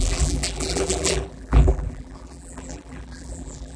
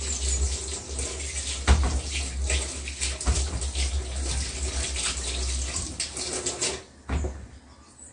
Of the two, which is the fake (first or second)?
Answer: first